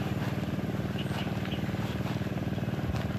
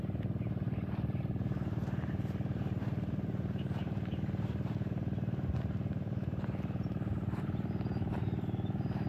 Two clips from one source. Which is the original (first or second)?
first